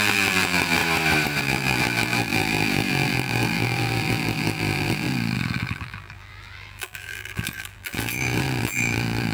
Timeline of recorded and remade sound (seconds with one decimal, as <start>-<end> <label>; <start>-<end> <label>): 0.0-0.8 remade; 0.8-1.4 recorded; 1.4-9.3 remade